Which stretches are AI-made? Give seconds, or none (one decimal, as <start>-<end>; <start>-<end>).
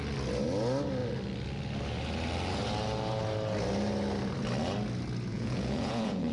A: 5.3-6.3